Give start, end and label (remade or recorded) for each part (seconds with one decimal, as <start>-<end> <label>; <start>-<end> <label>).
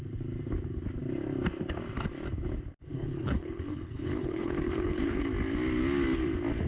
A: 0.0-2.9 recorded; 2.9-5.2 remade; 5.2-6.7 recorded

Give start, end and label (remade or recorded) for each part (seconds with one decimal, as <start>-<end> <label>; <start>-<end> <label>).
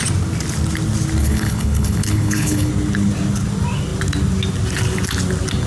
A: 0.0-1.2 recorded; 1.2-2.7 remade; 2.7-5.7 recorded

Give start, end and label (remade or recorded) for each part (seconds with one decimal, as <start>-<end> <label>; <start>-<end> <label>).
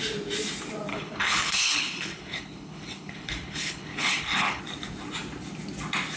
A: 0.0-0.9 recorded; 0.9-4.6 remade; 4.6-6.2 recorded